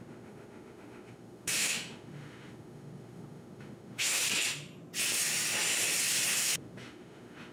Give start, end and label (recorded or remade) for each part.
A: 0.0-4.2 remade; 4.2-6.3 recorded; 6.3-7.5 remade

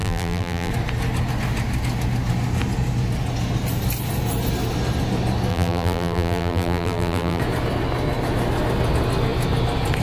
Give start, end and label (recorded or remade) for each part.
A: 0.0-0.7 remade; 0.7-5.5 recorded; 5.5-7.4 remade; 7.4-10.0 recorded

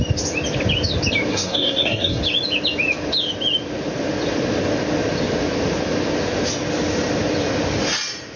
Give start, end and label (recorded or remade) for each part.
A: 0.0-1.3 recorded; 1.3-2.2 remade; 2.2-8.4 recorded

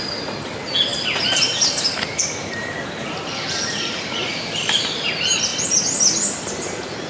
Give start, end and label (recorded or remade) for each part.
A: 0.0-0.9 recorded; 0.9-5.1 remade; 5.1-5.5 recorded; 5.5-6.5 remade; 6.5-7.1 recorded